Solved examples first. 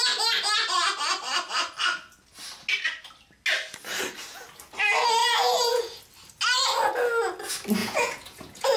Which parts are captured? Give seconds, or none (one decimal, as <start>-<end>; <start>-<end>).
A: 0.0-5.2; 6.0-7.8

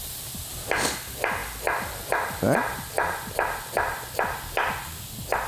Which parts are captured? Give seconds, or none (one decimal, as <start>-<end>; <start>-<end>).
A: 0.0-5.5

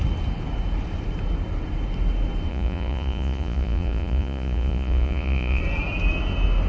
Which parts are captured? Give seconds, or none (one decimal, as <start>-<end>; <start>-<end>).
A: 0.0-2.5; 5.6-6.7

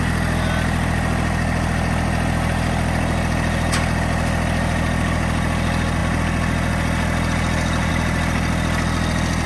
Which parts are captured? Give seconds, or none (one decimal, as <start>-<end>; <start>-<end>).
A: 0.0-9.5